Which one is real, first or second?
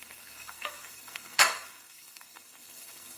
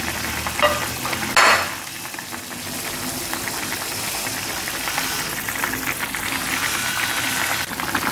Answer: second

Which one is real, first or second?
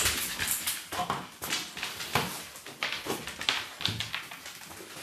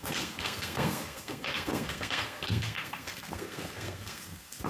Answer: first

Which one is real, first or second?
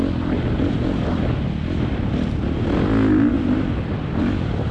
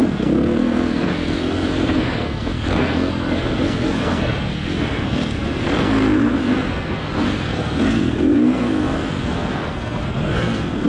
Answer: first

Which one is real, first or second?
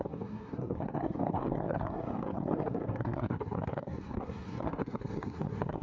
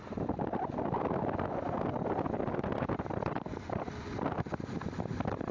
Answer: second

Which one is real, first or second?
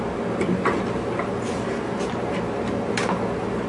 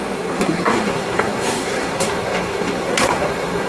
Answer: first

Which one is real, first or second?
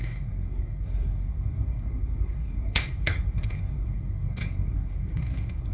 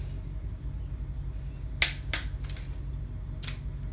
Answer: second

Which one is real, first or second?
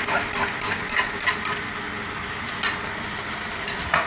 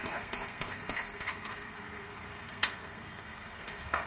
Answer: first